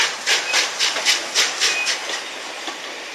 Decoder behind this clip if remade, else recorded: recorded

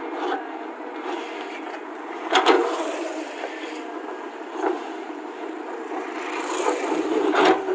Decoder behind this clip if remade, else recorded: remade, vocoder, BigVGAN v2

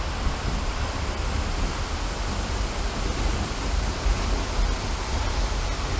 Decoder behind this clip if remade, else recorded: recorded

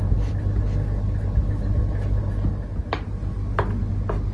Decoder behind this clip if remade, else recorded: recorded